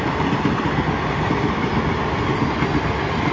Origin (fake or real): real